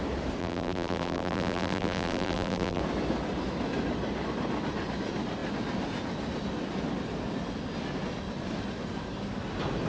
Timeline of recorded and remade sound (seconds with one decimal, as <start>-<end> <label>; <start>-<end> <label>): 0.0-0.4 recorded; 0.4-2.8 remade; 2.8-9.9 recorded